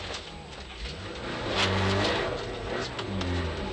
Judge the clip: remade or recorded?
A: recorded